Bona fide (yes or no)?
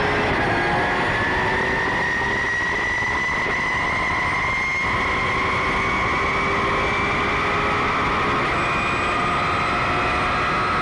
yes